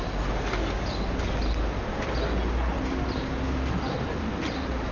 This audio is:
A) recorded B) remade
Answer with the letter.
A